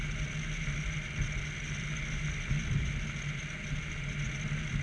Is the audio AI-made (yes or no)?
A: no